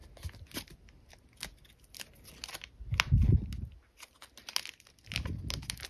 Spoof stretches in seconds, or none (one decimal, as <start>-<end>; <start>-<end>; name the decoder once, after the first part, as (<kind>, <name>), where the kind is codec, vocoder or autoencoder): none